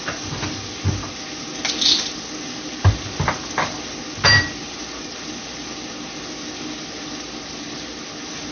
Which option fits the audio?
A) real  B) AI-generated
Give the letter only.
A